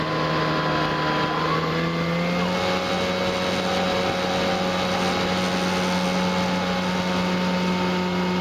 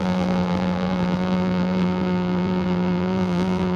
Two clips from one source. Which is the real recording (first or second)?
first